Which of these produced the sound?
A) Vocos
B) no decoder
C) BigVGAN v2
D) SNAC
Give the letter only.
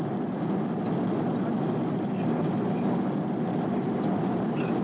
C